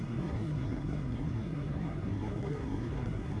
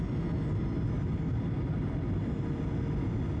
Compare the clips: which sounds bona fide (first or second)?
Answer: second